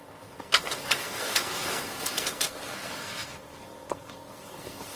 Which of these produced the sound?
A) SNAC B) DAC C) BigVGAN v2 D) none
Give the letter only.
A